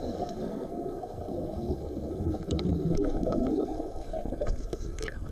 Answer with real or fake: fake